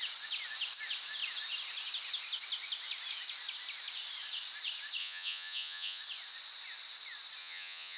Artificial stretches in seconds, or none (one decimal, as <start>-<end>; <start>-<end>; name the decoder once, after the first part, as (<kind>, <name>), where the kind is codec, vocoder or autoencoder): 5.0-6.0 (vocoder, Vocos); 7.4-8.0